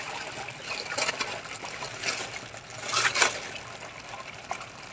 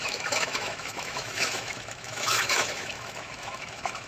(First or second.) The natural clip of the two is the first